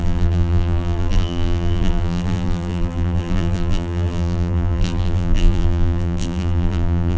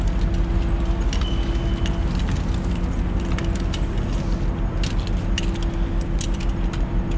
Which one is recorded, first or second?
second